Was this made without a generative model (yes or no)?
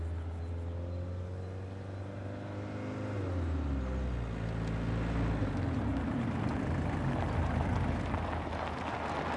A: yes